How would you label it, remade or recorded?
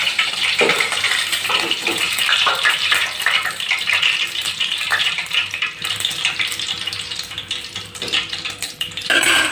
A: remade